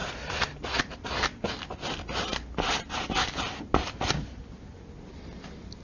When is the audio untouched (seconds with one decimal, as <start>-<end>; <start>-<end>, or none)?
0.0-5.8